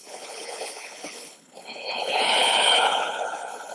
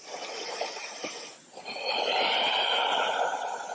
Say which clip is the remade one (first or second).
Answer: first